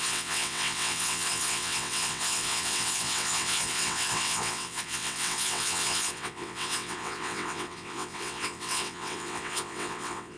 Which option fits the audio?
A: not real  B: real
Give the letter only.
A